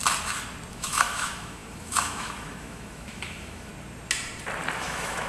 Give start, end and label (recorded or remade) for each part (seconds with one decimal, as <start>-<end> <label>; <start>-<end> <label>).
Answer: 0.0-0.7 recorded; 0.7-3.7 remade; 3.7-4.8 recorded; 4.8-5.3 remade